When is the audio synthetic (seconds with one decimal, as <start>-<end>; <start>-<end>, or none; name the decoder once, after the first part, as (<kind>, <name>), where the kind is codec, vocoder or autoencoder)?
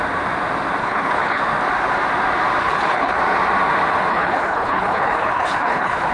0.8-1.4 (codec, HILCodec); 2.6-3.2; 4.1-6.1